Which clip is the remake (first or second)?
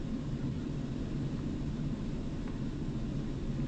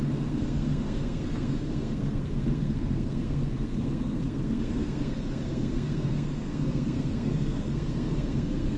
second